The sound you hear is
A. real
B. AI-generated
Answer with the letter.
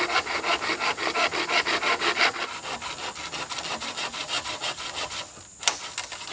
A